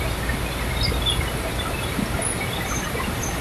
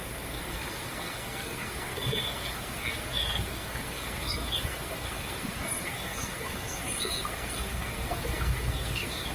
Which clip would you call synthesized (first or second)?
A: second